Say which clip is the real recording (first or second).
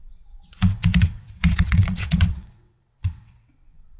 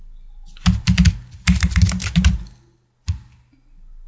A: second